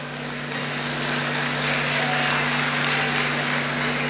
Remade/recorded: recorded